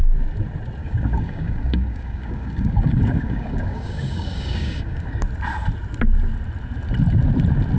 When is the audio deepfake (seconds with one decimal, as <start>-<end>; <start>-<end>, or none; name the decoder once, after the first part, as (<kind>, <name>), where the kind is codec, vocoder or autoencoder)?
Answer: 0.8-5.1 (codec, DAC)